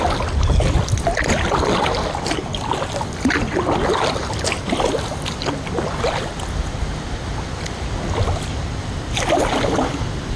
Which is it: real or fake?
real